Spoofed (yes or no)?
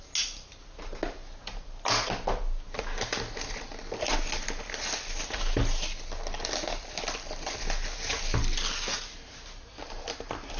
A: no